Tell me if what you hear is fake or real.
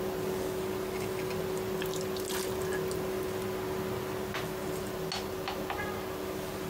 real